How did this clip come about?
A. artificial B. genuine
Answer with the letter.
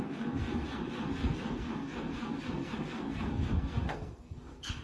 A